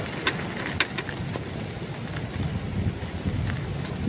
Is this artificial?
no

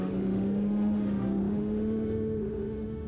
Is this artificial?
yes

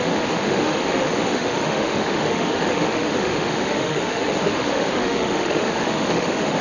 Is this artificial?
yes